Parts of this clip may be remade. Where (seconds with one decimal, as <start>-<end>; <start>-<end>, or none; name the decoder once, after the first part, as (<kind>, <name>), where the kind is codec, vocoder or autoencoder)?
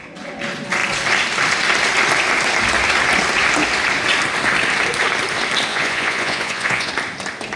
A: 5.7-6.9 (vocoder, Vocos)